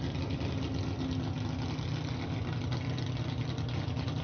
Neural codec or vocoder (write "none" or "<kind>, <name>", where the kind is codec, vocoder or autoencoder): none